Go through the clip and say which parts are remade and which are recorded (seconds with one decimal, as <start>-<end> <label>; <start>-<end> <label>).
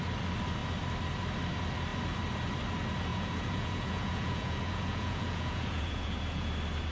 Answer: 0.0-3.1 recorded; 3.1-6.5 remade; 6.5-6.9 recorded